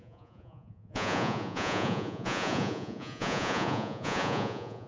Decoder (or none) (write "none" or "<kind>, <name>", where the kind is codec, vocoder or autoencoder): vocoder, Vocos